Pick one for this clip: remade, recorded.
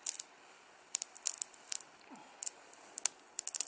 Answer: recorded